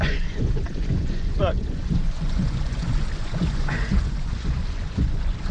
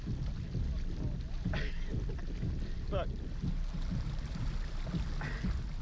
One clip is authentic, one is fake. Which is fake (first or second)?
first